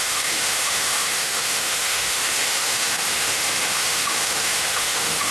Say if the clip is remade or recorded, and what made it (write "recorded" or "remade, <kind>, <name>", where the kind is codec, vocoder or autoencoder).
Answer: remade, autoencoder, DAC-VAE